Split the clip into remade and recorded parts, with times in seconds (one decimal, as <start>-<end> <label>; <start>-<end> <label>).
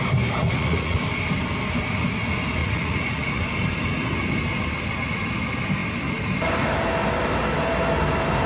0.0-0.4 recorded; 0.4-1.0 remade; 1.0-2.6 recorded; 2.6-3.4 remade; 3.4-8.5 recorded